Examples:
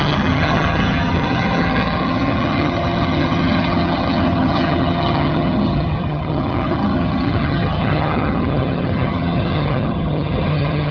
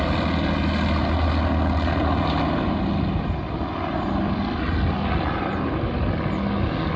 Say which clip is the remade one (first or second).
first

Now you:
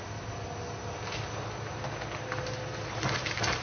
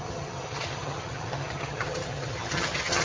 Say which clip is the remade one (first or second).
second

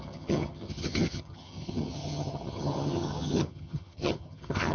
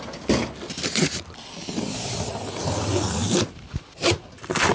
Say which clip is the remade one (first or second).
first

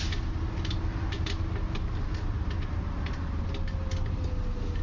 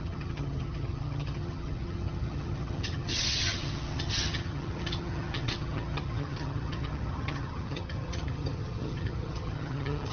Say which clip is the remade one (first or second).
second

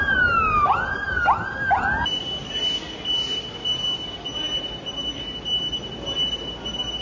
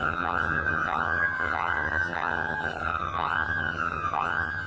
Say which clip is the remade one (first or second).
second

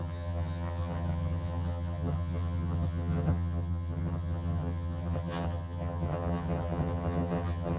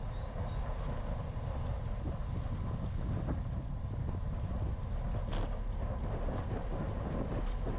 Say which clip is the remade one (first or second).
first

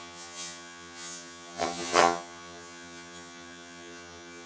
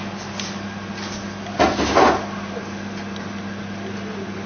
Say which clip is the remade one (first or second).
first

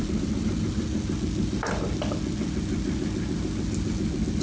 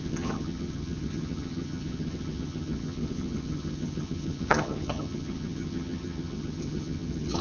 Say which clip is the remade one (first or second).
second